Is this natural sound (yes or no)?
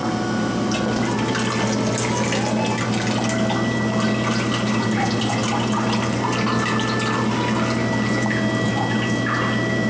yes